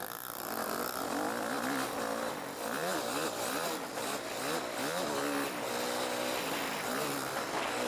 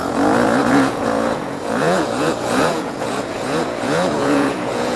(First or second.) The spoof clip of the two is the second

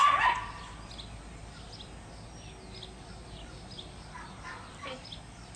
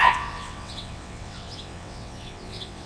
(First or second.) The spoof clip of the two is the second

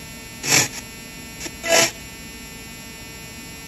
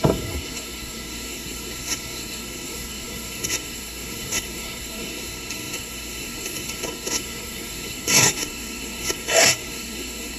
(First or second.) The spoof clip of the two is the second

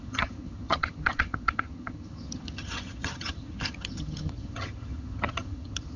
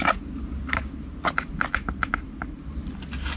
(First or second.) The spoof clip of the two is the first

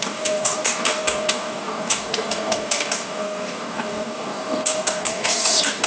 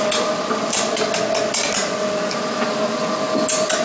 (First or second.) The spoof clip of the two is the first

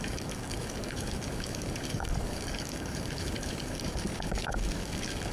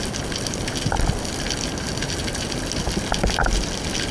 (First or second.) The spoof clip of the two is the first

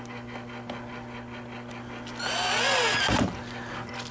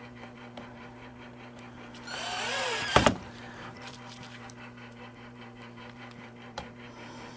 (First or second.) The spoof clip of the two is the second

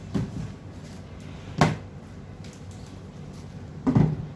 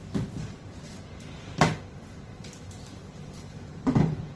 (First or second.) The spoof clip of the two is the second